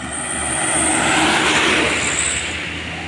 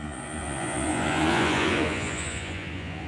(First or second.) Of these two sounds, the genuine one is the first